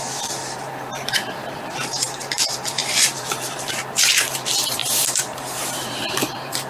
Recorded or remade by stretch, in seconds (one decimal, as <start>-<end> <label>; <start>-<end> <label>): 0.0-6.7 remade